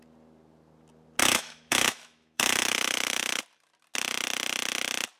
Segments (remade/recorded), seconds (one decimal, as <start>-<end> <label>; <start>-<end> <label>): 0.0-1.2 recorded; 1.2-3.4 remade; 3.4-5.2 recorded